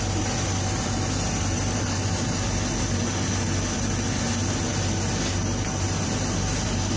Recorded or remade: recorded